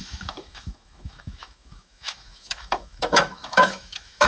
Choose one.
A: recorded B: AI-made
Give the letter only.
B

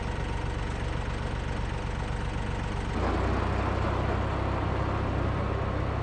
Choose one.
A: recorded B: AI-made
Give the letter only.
A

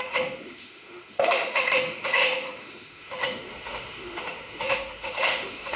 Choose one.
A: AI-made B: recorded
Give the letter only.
A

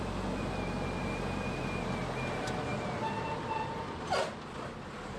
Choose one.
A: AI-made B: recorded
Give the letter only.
B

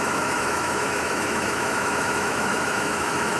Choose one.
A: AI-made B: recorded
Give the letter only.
A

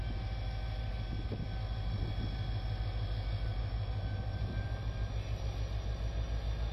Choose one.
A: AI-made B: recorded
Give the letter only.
B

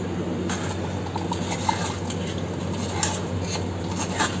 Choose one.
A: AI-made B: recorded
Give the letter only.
B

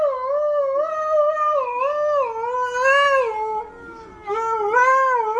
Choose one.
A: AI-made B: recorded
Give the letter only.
B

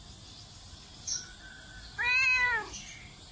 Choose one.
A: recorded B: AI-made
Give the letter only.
A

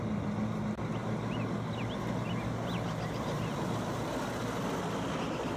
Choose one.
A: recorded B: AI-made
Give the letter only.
A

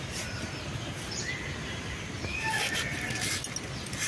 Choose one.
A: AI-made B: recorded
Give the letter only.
B